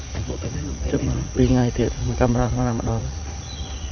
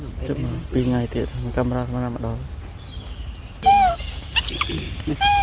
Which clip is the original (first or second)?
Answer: second